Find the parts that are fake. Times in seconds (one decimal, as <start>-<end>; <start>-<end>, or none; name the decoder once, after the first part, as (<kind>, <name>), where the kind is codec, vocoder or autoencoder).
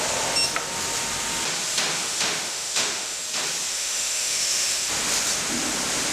2.0-3.2 (autoencoder, DAC-VAE); 3.7-4.9